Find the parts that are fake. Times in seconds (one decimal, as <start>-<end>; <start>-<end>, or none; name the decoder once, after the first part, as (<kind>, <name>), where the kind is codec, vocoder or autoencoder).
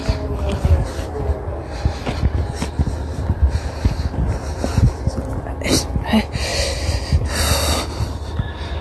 none